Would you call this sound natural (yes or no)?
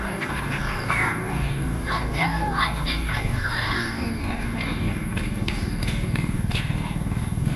no